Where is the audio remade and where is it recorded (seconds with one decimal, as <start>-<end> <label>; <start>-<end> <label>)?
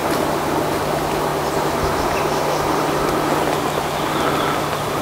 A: 0.0-5.0 recorded